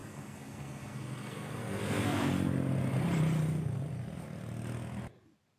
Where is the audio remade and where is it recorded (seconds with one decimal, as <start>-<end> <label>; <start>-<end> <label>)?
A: 0.0-2.3 remade; 2.3-5.6 recorded